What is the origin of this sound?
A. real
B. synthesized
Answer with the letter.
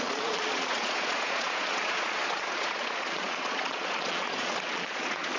B